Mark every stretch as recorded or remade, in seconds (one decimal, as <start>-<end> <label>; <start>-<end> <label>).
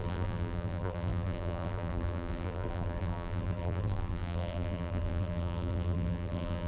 0.0-6.7 remade